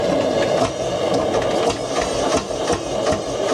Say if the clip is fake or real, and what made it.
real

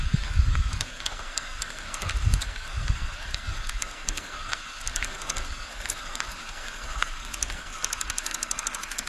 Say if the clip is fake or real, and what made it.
fake, codec, SNAC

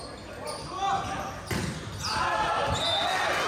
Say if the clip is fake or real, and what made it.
real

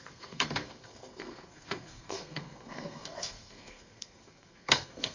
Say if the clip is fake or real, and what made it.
fake, codec, SNAC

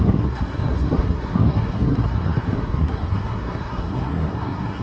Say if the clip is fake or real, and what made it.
fake, codec, SNAC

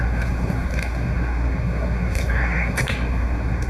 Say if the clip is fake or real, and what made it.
fake, codec, SNAC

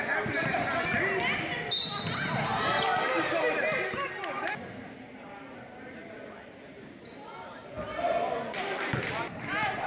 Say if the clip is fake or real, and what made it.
real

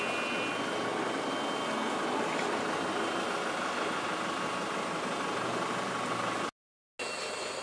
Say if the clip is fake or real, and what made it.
real